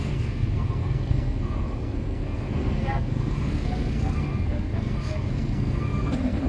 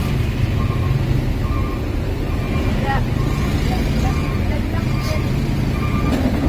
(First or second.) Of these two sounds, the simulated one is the first